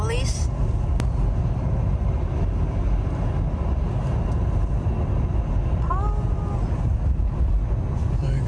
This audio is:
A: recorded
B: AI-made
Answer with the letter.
A